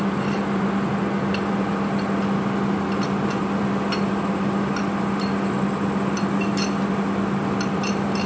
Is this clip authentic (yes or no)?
yes